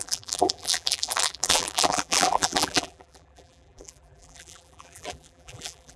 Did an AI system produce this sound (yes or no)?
yes